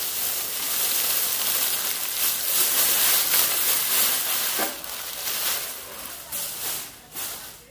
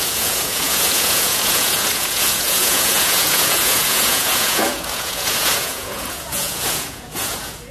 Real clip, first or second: first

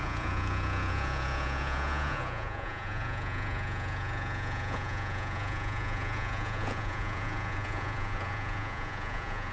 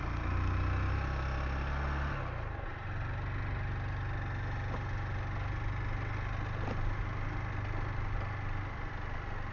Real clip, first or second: second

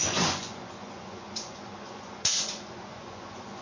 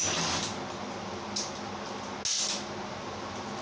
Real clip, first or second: second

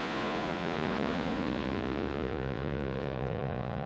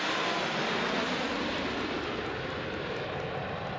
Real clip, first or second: second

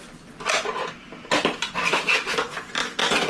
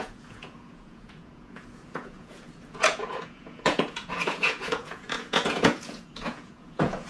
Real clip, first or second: first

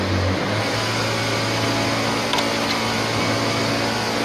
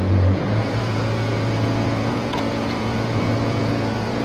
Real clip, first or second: first